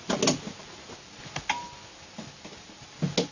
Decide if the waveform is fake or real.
real